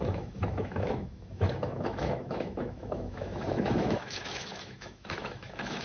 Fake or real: fake